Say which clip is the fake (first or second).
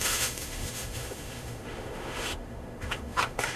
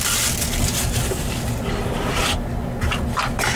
first